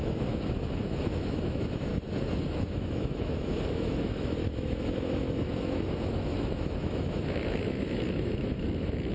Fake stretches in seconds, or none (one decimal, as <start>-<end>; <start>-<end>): 0.0-1.9; 2.5-9.1